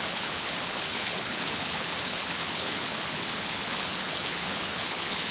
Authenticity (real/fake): fake